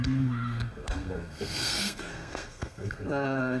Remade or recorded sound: remade